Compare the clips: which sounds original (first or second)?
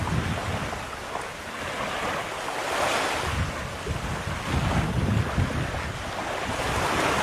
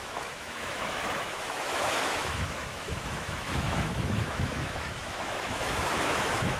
first